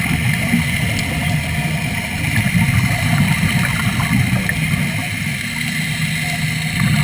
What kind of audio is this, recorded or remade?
recorded